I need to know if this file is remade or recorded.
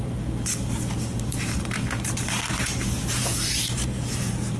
remade